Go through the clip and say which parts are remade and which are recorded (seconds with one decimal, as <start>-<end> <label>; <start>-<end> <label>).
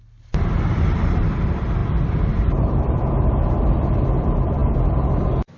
0.0-5.6 recorded